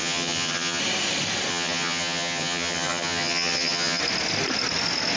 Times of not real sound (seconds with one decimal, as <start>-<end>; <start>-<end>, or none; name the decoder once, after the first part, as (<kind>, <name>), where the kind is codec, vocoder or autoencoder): 0.0-0.8 (vocoder, HiFi-GAN); 1.5-4.0